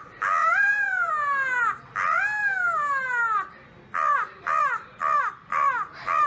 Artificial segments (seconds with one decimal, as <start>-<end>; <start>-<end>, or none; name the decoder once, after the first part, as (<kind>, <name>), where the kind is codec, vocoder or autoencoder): 0.4-1.1 (vocoder, Vocos)